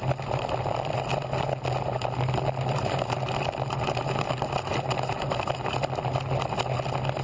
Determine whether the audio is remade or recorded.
recorded